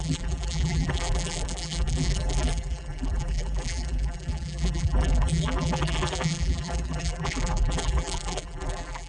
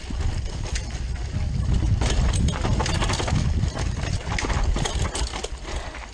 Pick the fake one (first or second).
first